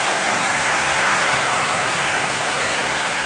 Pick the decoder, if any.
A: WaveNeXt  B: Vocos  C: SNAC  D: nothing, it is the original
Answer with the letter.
C